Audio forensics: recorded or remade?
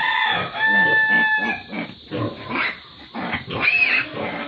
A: recorded